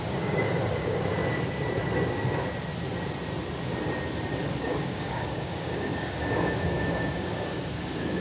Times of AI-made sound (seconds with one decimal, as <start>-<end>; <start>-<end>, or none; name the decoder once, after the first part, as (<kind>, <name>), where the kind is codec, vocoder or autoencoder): 0.0-1.2 (codec, DAC); 4.6-8.2